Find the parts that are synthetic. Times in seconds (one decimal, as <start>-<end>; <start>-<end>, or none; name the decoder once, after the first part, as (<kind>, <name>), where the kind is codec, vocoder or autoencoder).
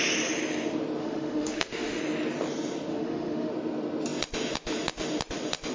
1.0-2.0 (autoencoder, DAC-VAE); 2.9-3.5